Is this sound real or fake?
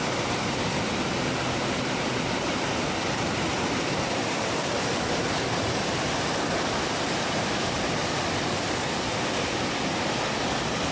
real